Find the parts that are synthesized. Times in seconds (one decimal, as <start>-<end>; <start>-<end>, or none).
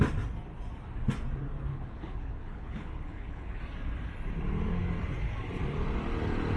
1.7-3.6